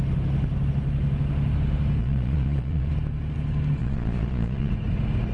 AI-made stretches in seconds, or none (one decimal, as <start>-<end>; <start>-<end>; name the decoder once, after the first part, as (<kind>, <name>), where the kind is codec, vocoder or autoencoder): 2.0-2.9 (vocoder, Vocos); 3.8-4.7